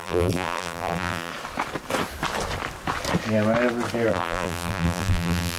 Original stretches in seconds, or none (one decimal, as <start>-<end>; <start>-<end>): 1.3-4.1